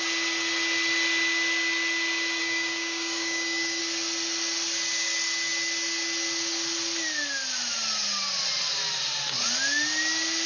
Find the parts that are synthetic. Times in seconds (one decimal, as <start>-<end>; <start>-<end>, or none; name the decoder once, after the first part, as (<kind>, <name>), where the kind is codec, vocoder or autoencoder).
2.4-3.8 (codec, DAC)